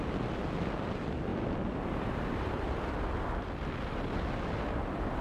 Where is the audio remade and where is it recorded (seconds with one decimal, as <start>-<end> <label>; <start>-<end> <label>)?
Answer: 0.0-1.3 recorded; 1.3-3.1 remade; 3.1-5.2 recorded

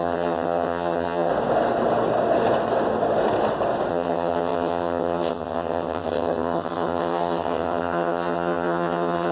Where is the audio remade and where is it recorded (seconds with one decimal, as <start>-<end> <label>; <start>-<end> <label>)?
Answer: 0.0-1.3 remade; 1.3-3.9 recorded; 3.9-9.3 remade

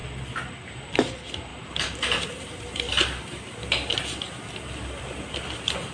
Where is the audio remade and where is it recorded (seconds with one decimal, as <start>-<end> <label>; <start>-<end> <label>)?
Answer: 0.0-0.7 recorded; 0.7-5.9 remade

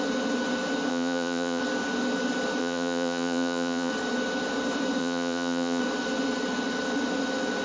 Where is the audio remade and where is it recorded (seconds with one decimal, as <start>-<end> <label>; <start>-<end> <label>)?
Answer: 0.0-0.9 recorded; 0.9-1.6 remade; 1.6-2.6 recorded; 2.6-3.9 remade; 3.9-5.0 recorded; 5.0-5.8 remade; 5.8-7.6 recorded